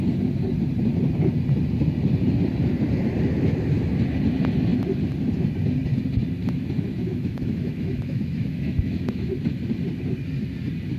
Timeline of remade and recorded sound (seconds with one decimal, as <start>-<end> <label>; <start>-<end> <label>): 0.0-6.4 recorded; 6.4-9.3 remade; 9.3-11.0 recorded